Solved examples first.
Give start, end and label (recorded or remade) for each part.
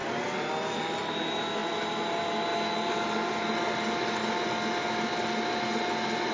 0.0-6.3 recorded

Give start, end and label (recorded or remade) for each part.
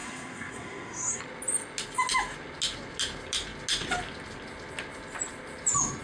0.0-1.2 remade; 1.2-6.0 recorded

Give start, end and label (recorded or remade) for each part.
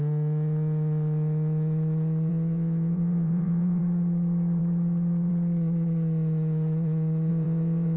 0.0-2.3 recorded; 2.3-3.8 remade; 3.8-7.3 recorded; 7.3-8.0 remade